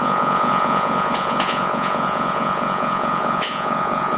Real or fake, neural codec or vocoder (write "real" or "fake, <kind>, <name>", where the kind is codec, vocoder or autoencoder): fake, vocoder, Vocos